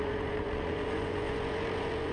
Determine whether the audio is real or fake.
fake